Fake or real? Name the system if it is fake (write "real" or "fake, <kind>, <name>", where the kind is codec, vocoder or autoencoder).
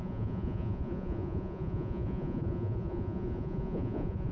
fake, vocoder, Vocos